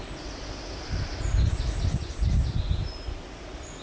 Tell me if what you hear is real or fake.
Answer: real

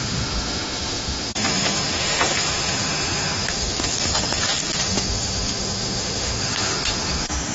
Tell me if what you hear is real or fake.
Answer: fake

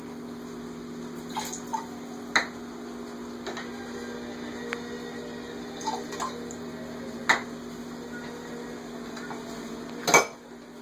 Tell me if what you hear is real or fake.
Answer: real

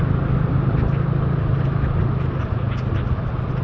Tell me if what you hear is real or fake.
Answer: real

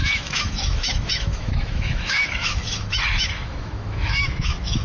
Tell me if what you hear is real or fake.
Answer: fake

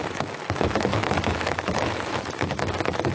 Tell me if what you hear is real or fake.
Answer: fake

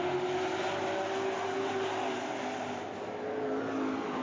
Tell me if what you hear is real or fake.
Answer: real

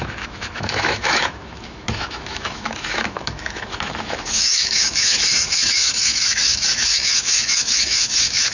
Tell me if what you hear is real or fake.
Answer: fake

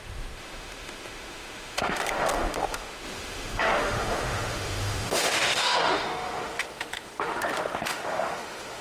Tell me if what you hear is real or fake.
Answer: fake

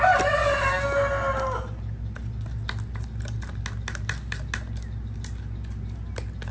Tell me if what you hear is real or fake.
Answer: real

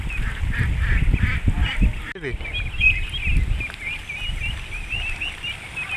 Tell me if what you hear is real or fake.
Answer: real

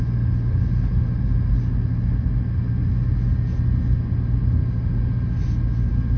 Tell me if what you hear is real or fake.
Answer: real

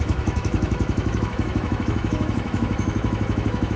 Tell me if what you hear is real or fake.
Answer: fake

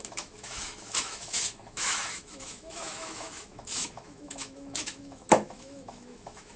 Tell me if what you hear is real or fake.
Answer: fake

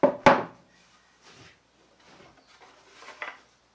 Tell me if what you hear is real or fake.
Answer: real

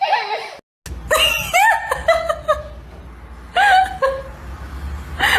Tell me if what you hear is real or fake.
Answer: real